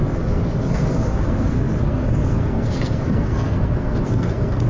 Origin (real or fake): fake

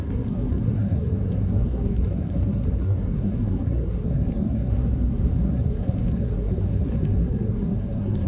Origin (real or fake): fake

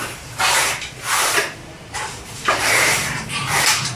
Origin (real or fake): fake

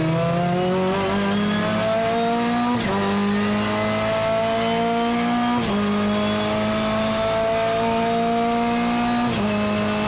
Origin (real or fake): real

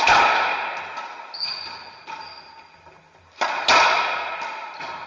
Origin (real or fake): real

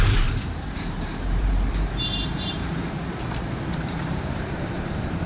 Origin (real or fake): fake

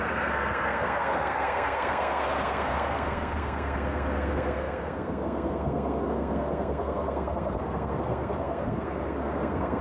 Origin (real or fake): fake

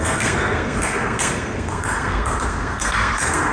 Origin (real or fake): fake